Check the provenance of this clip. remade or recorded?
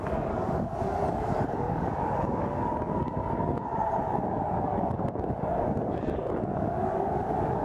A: remade